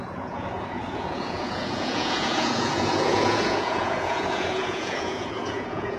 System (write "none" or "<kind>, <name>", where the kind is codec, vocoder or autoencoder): vocoder, Vocos